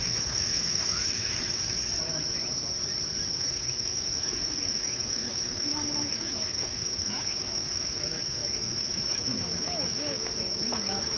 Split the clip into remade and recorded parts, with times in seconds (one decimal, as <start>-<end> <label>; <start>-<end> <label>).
0.0-1.8 remade; 1.8-3.3 recorded; 3.3-11.2 remade